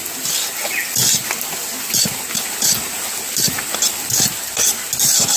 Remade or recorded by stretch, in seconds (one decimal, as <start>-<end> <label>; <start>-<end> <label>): 0.0-1.2 recorded; 1.2-1.9 remade; 1.9-5.4 recorded